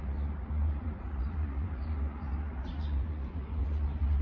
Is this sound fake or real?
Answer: fake